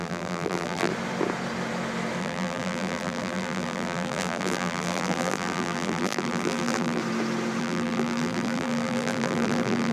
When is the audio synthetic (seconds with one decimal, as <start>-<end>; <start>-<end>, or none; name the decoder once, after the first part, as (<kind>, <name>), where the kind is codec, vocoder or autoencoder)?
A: 0.0-0.9 (vocoder, BigVGAN v2); 2.2-7.0; 7.6-9.9